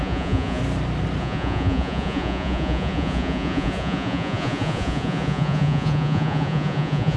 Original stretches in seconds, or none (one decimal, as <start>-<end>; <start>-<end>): 0.6-1.2